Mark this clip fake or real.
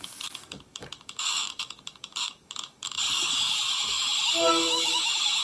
fake